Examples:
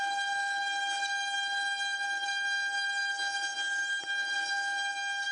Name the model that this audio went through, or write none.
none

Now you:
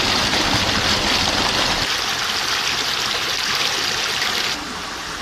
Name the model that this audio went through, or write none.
none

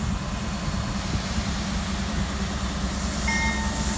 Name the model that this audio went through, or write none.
none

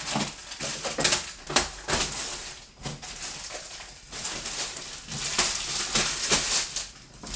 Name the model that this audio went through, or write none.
none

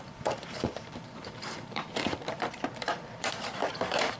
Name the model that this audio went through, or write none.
vocoder, BigVGAN v2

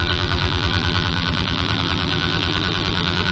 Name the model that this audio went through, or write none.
vocoder, BigVGAN v2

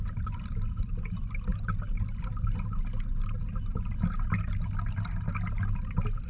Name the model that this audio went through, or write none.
none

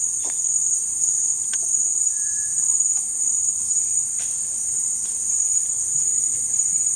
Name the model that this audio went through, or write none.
vocoder, BigVGAN v2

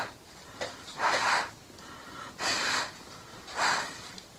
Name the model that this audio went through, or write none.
none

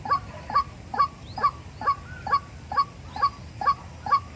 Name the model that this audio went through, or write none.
none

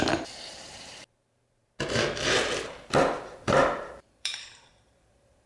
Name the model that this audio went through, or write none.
vocoder, BigVGAN v2